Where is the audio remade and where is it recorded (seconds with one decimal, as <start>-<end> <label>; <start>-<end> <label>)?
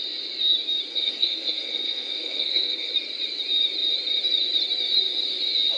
0.0-0.9 recorded; 0.9-2.9 remade; 2.9-5.8 recorded